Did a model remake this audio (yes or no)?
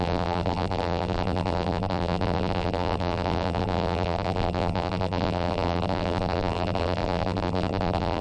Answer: yes